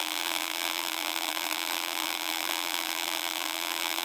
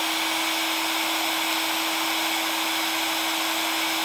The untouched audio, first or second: second